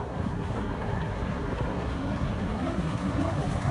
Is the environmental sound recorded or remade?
remade